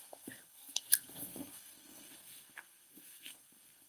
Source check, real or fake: fake